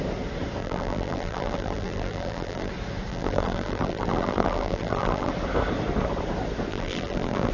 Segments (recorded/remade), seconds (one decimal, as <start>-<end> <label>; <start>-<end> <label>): 0.0-0.6 recorded; 0.6-2.7 remade; 2.7-3.1 recorded; 3.1-5.3 remade; 5.3-6.7 recorded; 6.7-7.5 remade